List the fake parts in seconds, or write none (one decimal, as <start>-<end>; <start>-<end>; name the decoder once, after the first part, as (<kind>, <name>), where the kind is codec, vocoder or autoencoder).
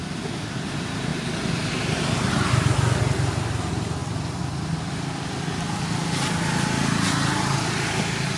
none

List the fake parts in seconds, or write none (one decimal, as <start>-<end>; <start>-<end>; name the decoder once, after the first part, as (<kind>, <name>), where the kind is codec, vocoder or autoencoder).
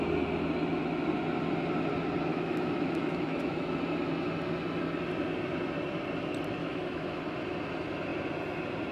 2.3-3.8 (autoencoder, DAC-VAE); 6.6-7.2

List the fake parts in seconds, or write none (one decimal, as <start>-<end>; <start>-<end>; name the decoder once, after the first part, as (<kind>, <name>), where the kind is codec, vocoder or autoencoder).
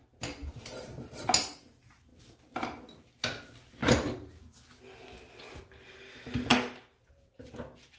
none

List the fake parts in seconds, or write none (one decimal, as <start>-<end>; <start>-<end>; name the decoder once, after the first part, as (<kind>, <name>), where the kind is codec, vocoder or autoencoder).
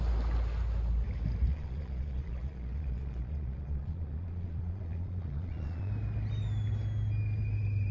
1.5-5.9 (vocoder, Vocos)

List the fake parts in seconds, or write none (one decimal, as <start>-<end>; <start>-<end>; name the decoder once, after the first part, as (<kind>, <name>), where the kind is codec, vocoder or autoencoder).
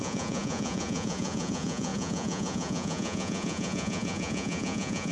0.0-5.1 (vocoder, Vocos)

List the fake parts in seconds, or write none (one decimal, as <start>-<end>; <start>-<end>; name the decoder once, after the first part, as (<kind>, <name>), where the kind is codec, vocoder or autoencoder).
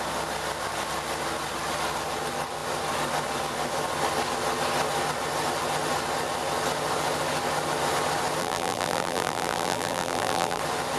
8.4-10.6 (vocoder, BigVGAN v2)